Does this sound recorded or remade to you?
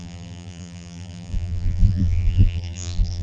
remade